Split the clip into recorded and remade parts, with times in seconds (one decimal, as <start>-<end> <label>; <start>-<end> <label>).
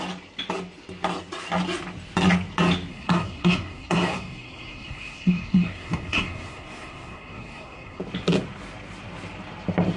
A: 0.0-2.9 recorded; 2.9-8.0 remade; 8.0-10.0 recorded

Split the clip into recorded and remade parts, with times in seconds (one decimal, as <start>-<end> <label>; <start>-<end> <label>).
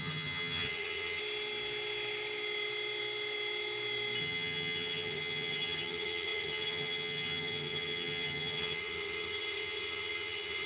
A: 0.0-1.2 remade; 1.2-4.2 recorded; 4.2-10.7 remade